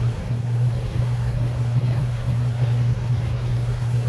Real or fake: fake